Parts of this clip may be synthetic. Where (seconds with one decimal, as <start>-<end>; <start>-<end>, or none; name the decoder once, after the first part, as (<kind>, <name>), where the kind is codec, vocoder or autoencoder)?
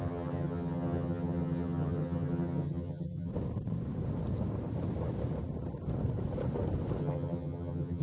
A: 0.0-3.3 (vocoder, HiFi-GAN); 7.0-8.0